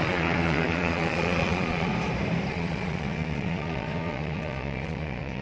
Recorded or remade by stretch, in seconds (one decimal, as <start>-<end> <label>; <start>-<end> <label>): 0.0-1.9 remade; 1.9-2.5 recorded; 2.5-5.4 remade